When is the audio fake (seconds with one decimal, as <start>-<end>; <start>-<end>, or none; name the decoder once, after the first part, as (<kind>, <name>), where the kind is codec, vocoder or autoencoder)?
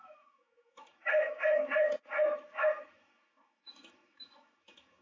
0.0-5.0 (autoencoder, DAC-VAE)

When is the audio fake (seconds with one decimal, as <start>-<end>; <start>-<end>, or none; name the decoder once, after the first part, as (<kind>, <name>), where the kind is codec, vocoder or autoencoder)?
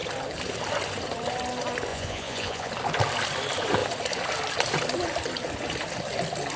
1.9-2.7 (vocoder, Vocos)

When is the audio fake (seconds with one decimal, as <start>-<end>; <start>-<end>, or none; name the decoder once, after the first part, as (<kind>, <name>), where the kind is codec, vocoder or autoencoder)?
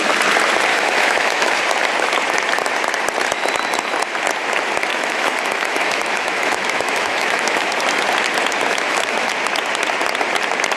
0.7-1.6 (autoencoder, DAC-VAE); 4.9-7.7; 8.7-9.3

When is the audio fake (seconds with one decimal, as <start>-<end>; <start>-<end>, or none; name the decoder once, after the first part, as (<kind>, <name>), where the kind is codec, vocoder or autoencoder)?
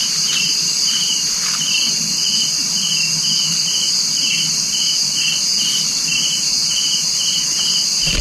0.0-1.0 (vocoder, BigVGAN v2); 6.1-6.8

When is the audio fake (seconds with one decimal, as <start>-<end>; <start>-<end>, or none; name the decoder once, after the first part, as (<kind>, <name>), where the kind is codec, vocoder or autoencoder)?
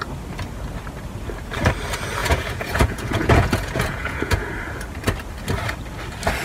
2.2-4.5 (vocoder, Vocos)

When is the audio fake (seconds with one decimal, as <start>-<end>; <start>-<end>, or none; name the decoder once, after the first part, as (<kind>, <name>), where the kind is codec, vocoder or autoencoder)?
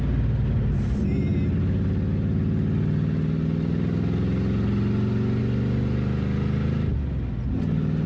none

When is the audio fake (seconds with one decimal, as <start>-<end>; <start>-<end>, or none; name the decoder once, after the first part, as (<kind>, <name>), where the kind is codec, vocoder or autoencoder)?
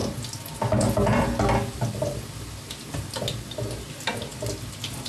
none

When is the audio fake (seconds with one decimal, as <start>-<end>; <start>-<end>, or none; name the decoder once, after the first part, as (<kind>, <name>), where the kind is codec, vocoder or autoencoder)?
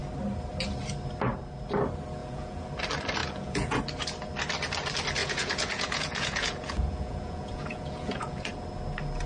2.2-2.7 (vocoder, Vocos); 3.2-3.8; 5.2-8.5